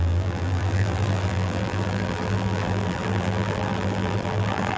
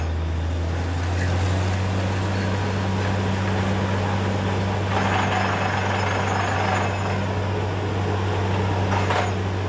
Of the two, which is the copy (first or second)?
first